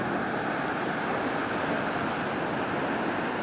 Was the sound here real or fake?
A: real